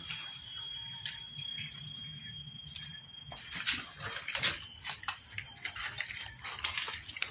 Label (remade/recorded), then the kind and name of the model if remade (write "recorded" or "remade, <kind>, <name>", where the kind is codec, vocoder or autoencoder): recorded